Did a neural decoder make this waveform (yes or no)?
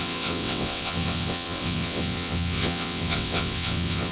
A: yes